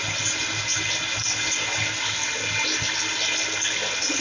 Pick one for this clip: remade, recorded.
recorded